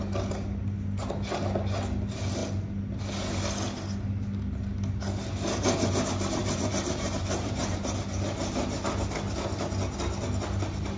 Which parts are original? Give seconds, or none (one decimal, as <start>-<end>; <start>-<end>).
0.0-6.4; 7.8-11.0